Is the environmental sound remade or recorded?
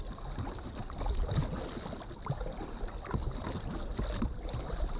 recorded